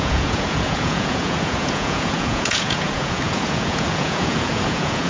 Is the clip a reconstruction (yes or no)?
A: yes